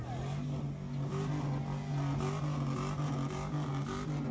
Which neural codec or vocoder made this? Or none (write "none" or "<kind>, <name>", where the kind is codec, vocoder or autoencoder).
none